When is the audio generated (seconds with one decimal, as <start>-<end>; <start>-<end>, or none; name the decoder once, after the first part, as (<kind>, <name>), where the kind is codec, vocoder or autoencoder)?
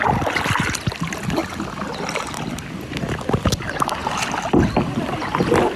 none